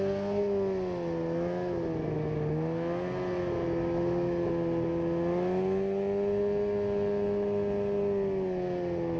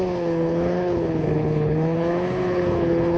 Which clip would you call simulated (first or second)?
second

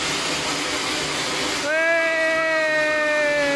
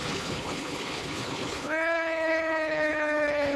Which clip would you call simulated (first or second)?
second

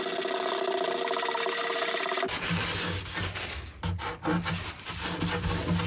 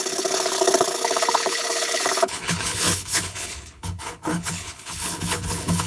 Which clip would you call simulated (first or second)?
second